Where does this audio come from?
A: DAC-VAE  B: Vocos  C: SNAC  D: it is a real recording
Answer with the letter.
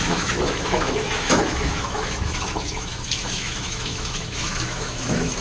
A